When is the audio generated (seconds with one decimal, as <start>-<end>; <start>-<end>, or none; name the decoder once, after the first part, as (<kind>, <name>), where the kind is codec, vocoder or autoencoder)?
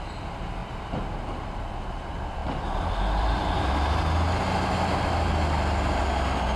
none